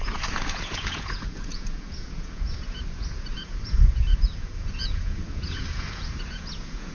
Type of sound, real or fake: fake